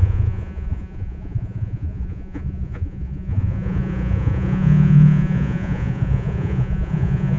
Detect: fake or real fake